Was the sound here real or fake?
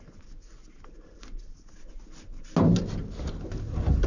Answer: real